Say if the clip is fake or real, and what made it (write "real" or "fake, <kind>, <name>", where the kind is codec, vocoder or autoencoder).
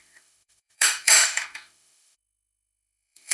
fake, autoencoder, DAC-VAE